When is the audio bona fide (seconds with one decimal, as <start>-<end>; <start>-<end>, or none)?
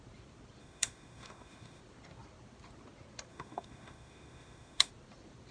0.0-0.6; 1.8-3.3; 4.9-5.5